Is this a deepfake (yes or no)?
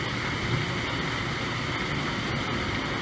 no